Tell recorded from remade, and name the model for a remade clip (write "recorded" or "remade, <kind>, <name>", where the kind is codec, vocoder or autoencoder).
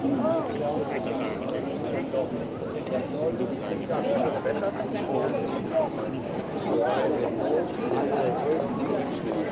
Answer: recorded